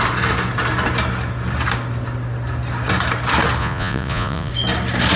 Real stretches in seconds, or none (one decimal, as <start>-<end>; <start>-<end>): 0.0-3.6; 4.5-5.2